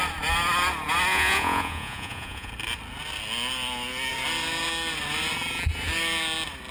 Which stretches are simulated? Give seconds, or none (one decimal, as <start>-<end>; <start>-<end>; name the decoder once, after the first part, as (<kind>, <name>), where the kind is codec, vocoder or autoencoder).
1.1-2.5 (vocoder, Vocos)